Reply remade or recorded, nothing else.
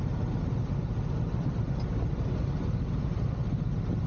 recorded